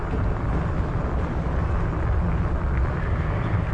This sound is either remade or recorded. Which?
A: recorded